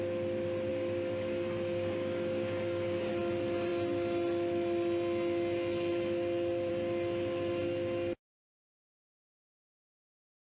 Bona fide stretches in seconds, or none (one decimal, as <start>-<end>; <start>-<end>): 0.0-0.7; 3.1-10.4